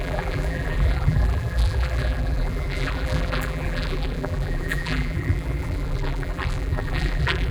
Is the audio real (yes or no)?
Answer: no